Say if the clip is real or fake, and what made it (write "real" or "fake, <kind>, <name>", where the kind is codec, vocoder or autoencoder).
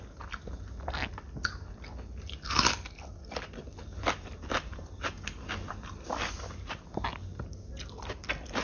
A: real